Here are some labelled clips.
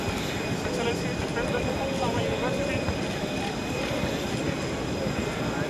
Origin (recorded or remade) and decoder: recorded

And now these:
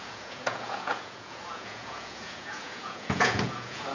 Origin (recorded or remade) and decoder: remade, vocoder, Vocos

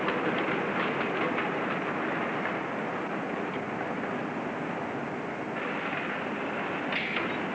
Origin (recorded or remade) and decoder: recorded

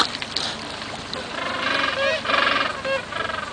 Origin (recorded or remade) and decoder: recorded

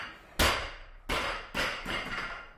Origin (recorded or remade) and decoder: recorded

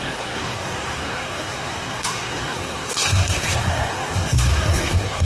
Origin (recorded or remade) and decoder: remade, codec, SNAC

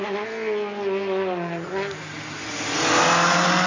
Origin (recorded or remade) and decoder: recorded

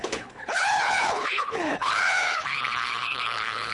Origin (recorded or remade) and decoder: remade, codec, HILCodec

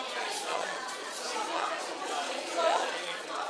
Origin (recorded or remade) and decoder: remade, vocoder, Vocos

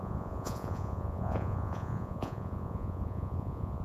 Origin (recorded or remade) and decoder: remade, vocoder, Vocos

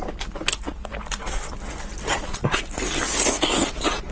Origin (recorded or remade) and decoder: recorded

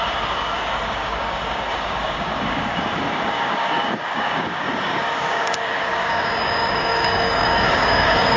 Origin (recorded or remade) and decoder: remade, codec, DAC